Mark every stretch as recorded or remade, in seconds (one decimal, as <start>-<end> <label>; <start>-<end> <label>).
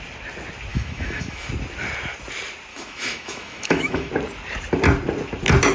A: 0.0-0.7 recorded; 0.7-1.5 remade; 1.5-2.7 recorded; 2.7-4.1 remade; 4.1-5.7 recorded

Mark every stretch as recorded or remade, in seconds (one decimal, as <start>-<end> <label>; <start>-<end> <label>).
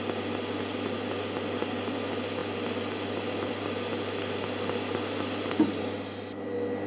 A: 0.0-6.9 recorded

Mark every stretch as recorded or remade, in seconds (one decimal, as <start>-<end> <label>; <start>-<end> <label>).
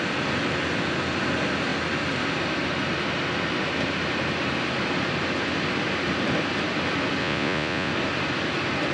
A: 0.0-7.2 recorded; 7.2-7.9 remade; 7.9-8.9 recorded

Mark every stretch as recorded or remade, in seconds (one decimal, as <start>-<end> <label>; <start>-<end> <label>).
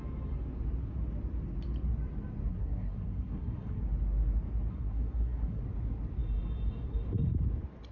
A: 0.0-2.5 recorded; 2.5-3.8 remade; 3.8-4.7 recorded; 4.7-5.6 remade; 5.6-7.9 recorded